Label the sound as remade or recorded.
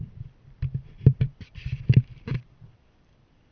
remade